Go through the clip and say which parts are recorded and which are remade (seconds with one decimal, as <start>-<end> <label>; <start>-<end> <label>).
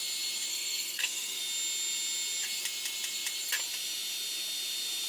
0.0-0.5 recorded; 0.5-1.4 remade; 1.4-5.1 recorded